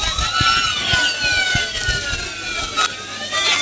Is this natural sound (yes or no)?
yes